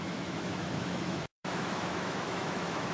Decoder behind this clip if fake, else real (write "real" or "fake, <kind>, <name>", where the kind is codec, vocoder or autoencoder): fake, autoencoder, DAC-VAE